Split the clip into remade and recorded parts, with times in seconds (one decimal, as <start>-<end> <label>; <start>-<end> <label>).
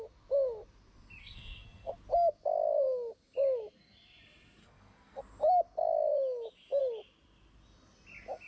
0.0-1.2 recorded; 1.2-1.9 remade; 1.9-4.6 recorded; 4.6-5.2 remade; 5.2-8.5 recorded